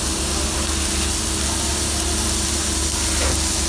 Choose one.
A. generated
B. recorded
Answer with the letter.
B